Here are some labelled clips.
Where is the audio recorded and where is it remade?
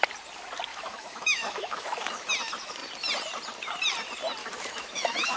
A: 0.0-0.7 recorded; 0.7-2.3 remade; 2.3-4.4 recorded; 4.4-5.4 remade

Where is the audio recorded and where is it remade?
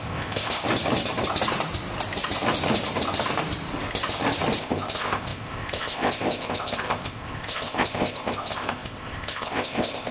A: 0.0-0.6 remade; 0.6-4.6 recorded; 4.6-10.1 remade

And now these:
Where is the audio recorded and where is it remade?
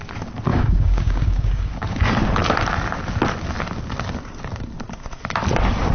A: 0.0-0.5 recorded; 0.5-2.0 remade; 2.0-5.9 recorded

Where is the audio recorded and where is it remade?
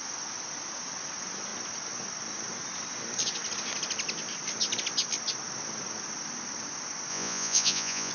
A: 0.0-7.1 recorded; 7.1-8.1 remade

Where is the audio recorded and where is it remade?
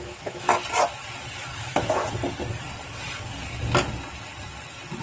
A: 0.0-0.5 remade; 0.5-1.6 recorded; 1.6-2.0 remade; 2.0-5.0 recorded